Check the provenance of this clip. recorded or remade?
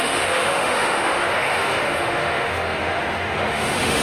remade